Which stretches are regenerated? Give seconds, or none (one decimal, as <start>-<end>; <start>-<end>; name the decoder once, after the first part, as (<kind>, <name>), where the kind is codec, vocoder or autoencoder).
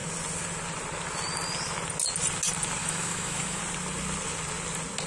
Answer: 2.8-3.6 (autoencoder, DAC-VAE)